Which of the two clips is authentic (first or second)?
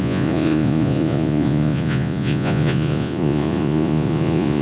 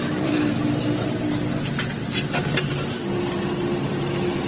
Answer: second